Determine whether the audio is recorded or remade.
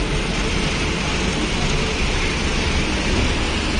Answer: recorded